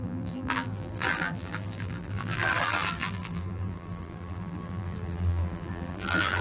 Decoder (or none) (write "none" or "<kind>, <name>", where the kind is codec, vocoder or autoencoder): vocoder, BigVGAN v2